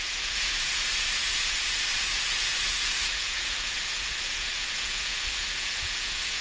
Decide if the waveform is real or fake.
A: fake